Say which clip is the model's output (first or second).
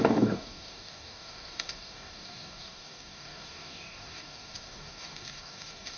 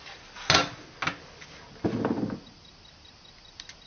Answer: first